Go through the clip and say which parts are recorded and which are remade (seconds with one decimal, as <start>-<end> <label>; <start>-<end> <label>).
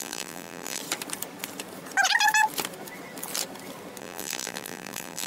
0.0-0.8 remade; 0.8-4.0 recorded; 4.0-5.3 remade